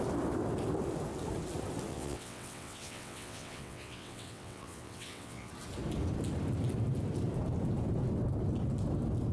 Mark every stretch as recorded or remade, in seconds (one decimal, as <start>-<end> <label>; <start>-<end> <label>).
0.0-1.9 recorded; 1.9-5.5 remade; 5.5-9.3 recorded